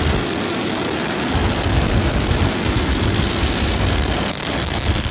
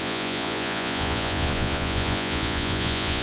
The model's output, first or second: second